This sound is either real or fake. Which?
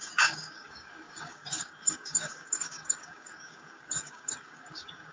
fake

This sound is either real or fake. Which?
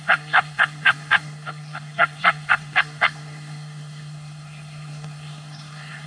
fake